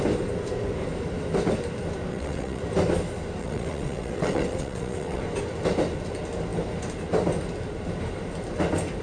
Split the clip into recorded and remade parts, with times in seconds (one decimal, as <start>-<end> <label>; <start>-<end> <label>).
0.0-2.1 recorded; 2.1-2.6 remade; 2.6-3.4 recorded; 3.4-5.2 remade; 5.2-9.0 recorded